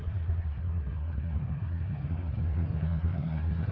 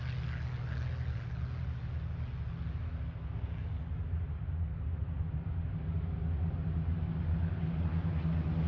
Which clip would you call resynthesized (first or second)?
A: first